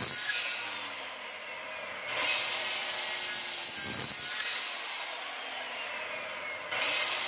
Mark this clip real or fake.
real